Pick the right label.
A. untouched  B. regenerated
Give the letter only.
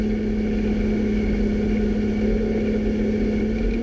A